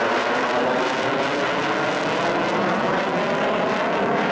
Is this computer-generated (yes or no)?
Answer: no